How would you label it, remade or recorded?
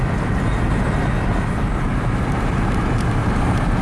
recorded